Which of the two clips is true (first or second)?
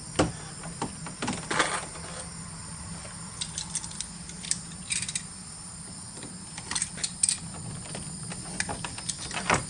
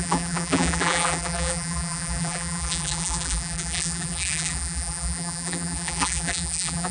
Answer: first